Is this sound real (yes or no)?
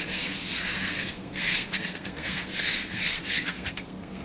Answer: no